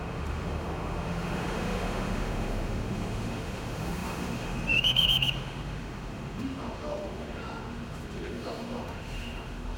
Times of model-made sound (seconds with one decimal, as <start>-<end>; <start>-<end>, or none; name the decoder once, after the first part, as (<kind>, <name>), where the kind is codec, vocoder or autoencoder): 0.0-9.8 (autoencoder, DAC-VAE)